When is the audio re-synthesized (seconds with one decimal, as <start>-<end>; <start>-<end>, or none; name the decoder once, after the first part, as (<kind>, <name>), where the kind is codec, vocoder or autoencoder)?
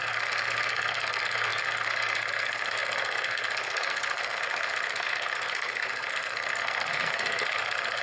0.0-8.0 (codec, SNAC)